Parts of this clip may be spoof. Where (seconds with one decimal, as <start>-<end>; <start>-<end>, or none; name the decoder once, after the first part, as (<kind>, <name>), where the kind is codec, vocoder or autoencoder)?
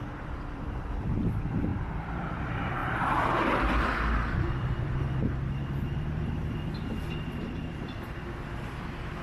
0.0-2.8 (vocoder, BigVGAN v2); 4.3-5.6; 6.9-9.2